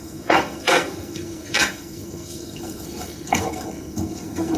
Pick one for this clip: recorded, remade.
remade